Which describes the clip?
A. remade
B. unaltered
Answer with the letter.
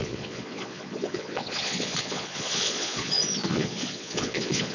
A